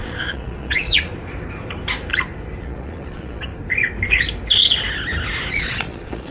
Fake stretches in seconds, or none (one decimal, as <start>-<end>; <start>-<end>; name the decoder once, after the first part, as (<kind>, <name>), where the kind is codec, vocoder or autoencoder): 0.0-1.1 (vocoder, Vocos); 2.6-3.5; 5.5-6.3